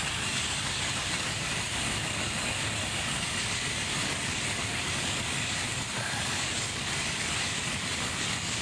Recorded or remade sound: remade